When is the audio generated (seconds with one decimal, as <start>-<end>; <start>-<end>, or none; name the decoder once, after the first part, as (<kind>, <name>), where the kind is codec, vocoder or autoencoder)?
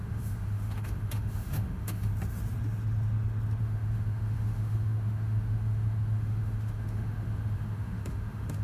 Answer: 0.0-2.1 (autoencoder, DAC-VAE); 3.6-8.6